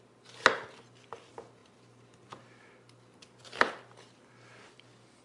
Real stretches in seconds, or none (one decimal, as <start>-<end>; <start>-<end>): 0.0-5.2